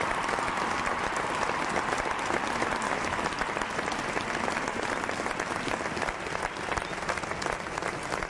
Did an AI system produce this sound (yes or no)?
no